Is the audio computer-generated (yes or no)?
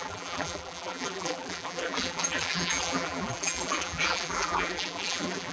yes